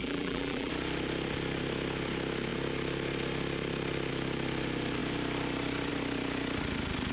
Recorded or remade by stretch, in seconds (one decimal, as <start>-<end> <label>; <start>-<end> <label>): 0.0-0.7 remade; 0.7-7.1 recorded